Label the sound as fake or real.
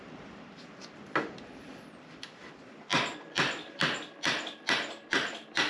fake